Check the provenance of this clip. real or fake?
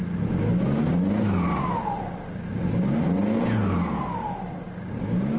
real